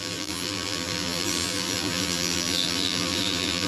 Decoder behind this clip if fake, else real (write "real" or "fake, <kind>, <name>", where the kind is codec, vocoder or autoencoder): fake, vocoder, BigVGAN v2